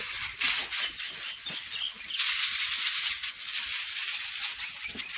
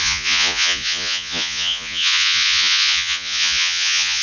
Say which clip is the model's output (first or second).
second